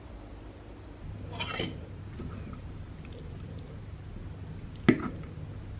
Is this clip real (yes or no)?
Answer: yes